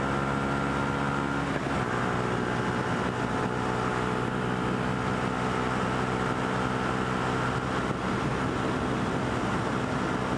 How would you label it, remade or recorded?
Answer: recorded